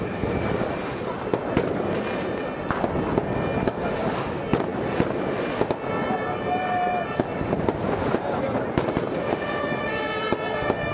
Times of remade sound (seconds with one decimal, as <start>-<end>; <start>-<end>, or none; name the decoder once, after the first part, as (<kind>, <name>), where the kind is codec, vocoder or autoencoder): none